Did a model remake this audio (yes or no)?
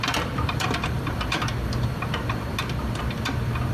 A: yes